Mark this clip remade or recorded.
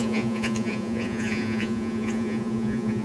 remade